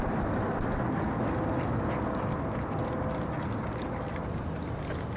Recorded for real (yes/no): yes